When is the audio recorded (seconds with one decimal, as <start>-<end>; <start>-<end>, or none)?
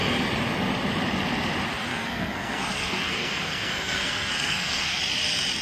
0.0-1.9; 5.0-5.6